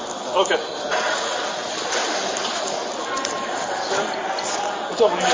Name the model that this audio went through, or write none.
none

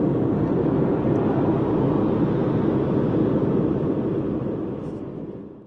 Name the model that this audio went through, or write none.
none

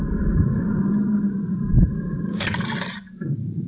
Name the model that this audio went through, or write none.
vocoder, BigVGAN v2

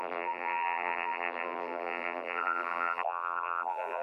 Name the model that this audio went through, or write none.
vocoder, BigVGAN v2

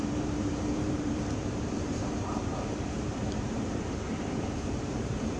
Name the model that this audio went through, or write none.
vocoder, BigVGAN v2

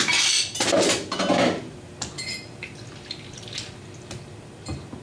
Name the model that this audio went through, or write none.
none